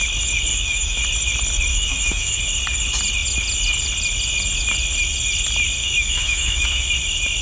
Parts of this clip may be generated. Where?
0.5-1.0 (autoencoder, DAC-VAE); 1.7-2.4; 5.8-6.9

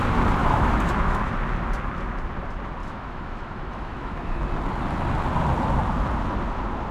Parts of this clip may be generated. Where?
0.4-1.3 (autoencoder, DAC-VAE); 2.8-4.4

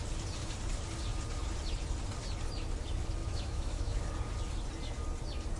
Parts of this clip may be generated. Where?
3.2-4.0 (autoencoder, DAC-VAE)